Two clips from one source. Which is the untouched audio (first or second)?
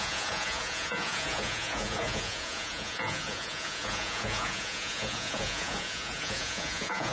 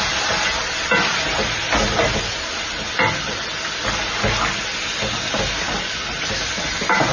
second